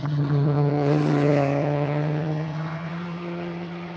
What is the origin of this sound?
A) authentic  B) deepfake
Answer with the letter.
B